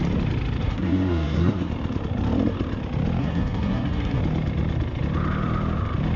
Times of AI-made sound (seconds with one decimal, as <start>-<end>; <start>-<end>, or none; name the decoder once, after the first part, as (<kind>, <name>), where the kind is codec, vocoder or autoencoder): 0.6-1.7 (codec, SNAC); 3.2-4.2